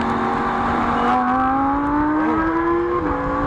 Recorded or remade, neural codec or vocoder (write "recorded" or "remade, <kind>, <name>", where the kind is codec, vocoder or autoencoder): recorded